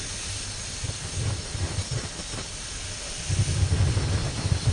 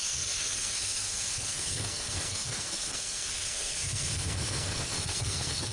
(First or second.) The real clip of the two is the first